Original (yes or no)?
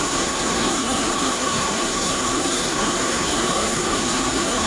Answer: no